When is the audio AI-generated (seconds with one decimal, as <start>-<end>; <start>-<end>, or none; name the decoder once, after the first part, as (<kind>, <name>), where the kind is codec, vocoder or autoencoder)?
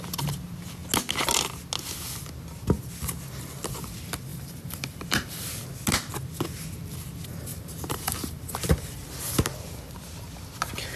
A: 4.3-5.5 (vocoder, BigVGAN v2); 7.5-9.1